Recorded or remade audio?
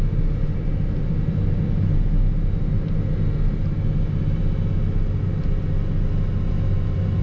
recorded